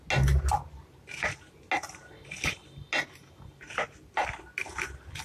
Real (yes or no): yes